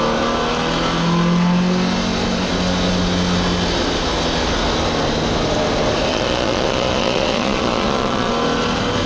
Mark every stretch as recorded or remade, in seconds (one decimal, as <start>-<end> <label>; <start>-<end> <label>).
0.0-6.1 recorded; 6.1-8.3 remade; 8.3-9.1 recorded